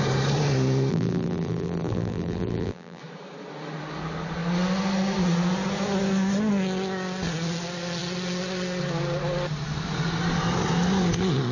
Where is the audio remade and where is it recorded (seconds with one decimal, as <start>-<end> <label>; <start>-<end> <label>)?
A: 0.0-0.9 recorded; 0.9-3.0 remade; 3.0-11.5 recorded